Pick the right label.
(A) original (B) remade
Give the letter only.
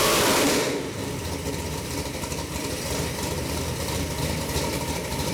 B